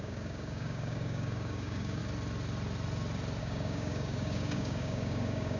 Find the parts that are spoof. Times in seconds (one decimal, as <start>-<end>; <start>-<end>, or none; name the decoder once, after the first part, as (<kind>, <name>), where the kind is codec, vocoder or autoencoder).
0.0-2.0 (codec, DAC); 3.4-5.6